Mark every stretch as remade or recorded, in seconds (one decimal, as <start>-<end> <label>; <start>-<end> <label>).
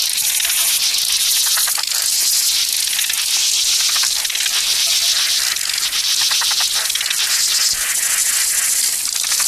0.0-9.5 recorded